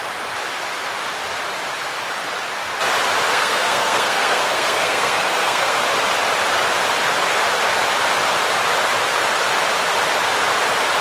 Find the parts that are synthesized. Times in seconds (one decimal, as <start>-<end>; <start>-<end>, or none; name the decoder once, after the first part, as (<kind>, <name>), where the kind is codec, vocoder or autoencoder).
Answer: 3.3-5.8 (codec, SNAC)